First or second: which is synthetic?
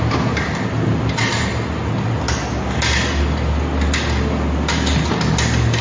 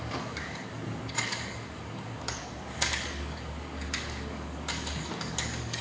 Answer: second